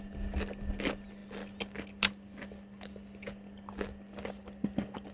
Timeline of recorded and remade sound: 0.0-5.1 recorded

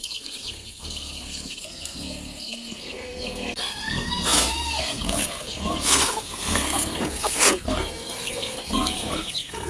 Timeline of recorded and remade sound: 0.0-9.7 remade